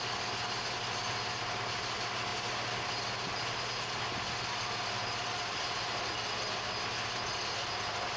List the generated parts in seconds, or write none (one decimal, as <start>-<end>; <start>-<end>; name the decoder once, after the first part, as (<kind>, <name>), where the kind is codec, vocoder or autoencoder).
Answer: none